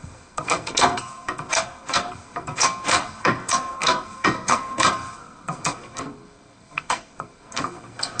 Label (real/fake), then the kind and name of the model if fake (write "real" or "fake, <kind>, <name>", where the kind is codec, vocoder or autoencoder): fake, codec, SNAC